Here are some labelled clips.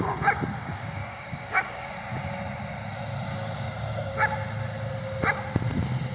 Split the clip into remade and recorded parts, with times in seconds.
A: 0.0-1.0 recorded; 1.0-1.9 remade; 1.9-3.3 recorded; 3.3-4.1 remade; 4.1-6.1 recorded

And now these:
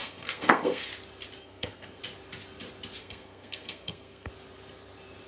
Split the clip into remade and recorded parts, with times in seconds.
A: 0.0-0.9 remade; 0.9-1.4 recorded; 1.4-2.0 remade; 2.0-3.0 recorded; 3.0-4.3 remade; 4.3-5.3 recorded

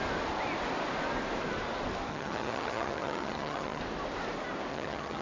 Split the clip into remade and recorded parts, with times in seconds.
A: 0.0-2.1 recorded; 2.1-3.8 remade; 3.8-4.7 recorded; 4.7-5.2 remade

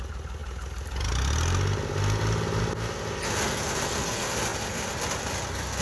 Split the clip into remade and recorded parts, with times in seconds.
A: 0.0-5.8 recorded